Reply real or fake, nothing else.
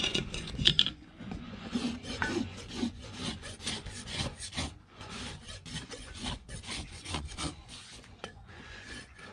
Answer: fake